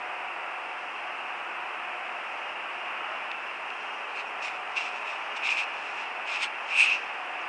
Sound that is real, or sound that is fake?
real